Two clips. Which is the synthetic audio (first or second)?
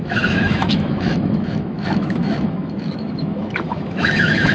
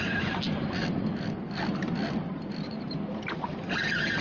first